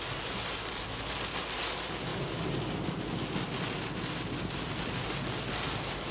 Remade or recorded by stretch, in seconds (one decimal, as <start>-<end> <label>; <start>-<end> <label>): 0.0-6.1 recorded